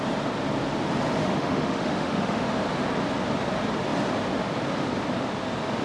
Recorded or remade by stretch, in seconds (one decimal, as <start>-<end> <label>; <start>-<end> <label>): 0.0-1.2 recorded; 1.2-2.5 remade; 2.5-5.8 recorded